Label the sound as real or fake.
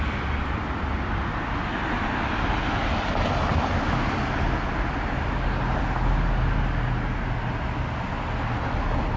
real